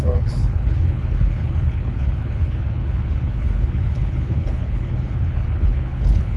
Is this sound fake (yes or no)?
yes